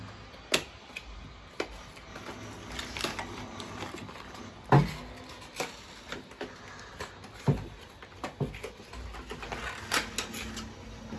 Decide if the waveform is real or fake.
real